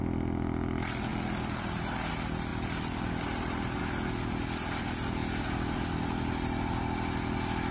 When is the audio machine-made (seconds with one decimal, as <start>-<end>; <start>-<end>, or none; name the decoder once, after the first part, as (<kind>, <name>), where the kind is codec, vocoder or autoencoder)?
2.5-3.8 (vocoder, BigVGAN v2); 5.2-6.7